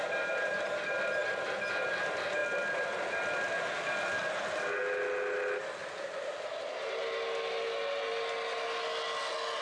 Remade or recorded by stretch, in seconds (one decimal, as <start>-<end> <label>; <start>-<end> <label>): 0.0-9.6 recorded